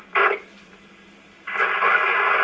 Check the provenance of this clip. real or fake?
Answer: real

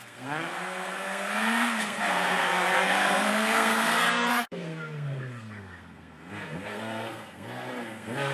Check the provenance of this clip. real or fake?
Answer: fake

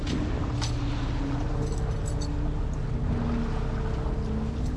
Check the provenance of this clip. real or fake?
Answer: real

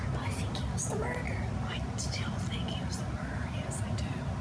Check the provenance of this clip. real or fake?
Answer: real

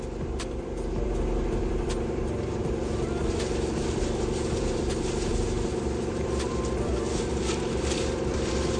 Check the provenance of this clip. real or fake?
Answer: fake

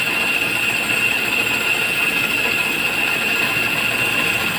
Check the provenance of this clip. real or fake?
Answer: real